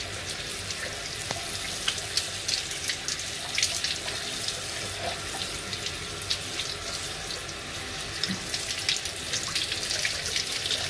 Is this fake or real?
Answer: real